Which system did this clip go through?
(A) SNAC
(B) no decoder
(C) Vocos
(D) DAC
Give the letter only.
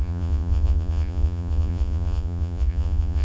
C